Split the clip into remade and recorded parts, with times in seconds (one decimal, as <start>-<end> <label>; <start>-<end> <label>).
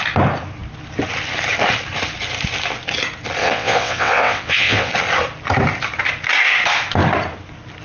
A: 0.0-3.4 recorded; 3.4-4.9 remade; 4.9-7.8 recorded